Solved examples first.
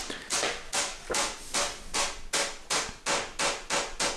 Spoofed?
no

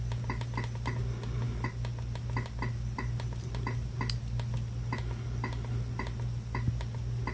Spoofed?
no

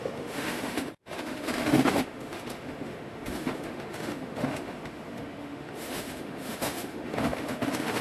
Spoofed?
yes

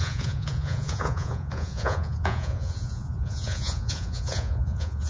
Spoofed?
yes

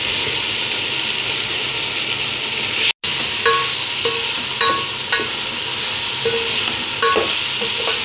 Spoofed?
no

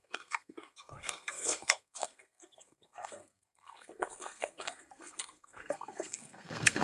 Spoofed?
yes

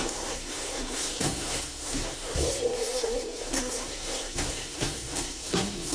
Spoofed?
yes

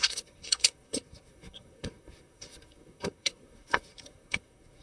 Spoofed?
yes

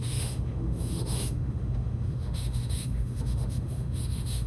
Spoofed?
yes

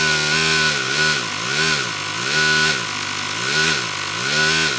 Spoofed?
no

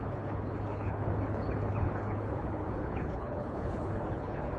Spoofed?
yes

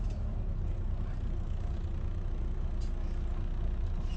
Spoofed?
no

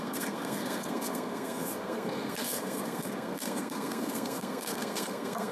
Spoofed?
yes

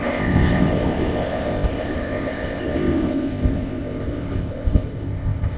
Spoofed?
yes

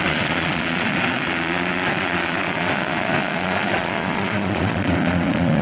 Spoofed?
yes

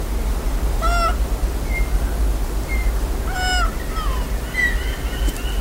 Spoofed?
no